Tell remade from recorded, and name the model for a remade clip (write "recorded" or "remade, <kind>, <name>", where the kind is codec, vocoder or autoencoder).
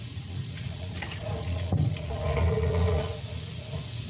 remade, vocoder, Vocos